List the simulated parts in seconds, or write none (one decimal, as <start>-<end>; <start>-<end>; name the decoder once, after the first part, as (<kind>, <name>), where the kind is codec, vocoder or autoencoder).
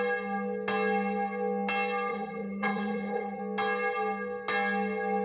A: 2.1-3.4 (vocoder, HiFi-GAN)